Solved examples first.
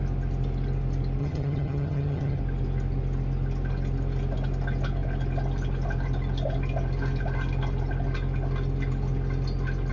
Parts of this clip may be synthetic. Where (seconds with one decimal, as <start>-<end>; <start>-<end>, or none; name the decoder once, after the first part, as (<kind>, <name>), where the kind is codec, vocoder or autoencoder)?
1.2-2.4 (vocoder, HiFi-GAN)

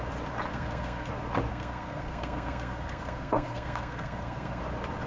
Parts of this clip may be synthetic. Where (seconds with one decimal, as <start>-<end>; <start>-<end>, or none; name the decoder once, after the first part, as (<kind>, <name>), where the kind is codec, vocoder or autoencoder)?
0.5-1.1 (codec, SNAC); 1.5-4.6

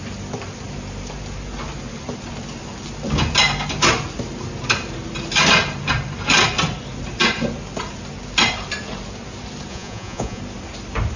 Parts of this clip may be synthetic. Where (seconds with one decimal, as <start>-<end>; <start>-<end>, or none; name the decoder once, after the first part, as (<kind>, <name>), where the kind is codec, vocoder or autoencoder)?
9.7-10.4 (vocoder, Vocos)

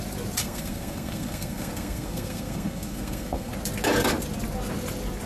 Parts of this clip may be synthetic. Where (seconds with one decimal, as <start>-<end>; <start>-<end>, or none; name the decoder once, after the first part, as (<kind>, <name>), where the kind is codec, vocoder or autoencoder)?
0.4-3.5 (codec, SNAC)